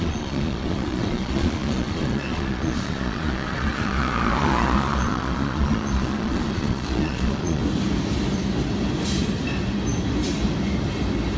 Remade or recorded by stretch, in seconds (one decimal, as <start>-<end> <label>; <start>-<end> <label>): 0.0-7.6 remade; 7.6-11.4 recorded